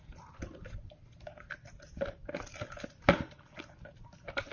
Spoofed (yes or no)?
no